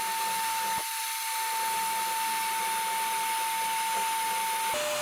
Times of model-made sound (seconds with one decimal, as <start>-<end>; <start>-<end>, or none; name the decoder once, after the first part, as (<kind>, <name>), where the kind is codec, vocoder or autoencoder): none